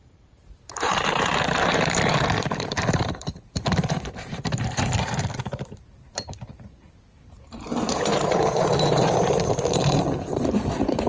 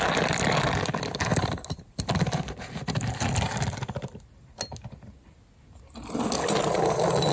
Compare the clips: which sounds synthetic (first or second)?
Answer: first